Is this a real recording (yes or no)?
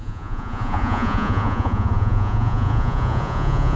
no